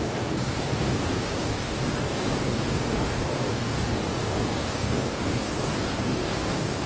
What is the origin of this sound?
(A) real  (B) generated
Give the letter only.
B